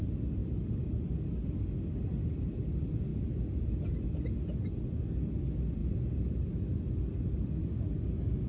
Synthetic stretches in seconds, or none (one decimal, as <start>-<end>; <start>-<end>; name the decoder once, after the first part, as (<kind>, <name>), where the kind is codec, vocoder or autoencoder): none